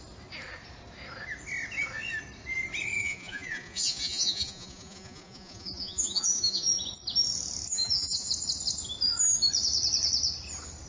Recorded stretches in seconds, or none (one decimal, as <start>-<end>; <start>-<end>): 0.0-3.0; 6.8-7.7; 8.3-10.9